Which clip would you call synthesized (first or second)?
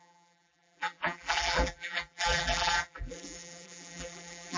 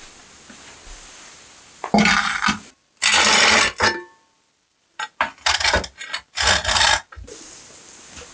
first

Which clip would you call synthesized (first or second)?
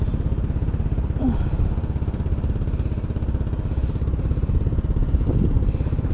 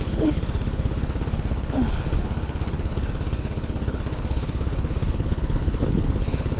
second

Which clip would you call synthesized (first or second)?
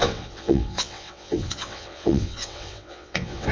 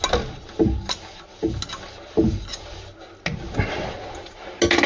first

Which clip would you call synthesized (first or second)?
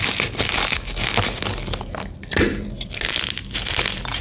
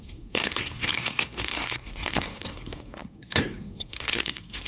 second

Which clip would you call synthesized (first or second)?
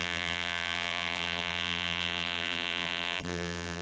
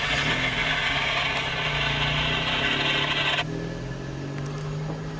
first